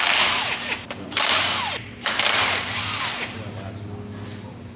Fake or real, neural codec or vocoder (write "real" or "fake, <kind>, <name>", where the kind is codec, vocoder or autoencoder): real